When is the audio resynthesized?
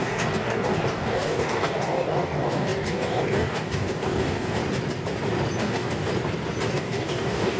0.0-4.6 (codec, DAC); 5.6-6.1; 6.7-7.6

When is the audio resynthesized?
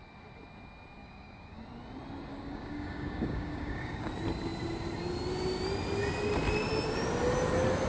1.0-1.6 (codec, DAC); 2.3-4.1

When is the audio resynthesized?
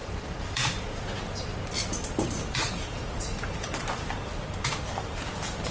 0.0-0.9 (vocoder, BigVGAN v2); 1.5-4.4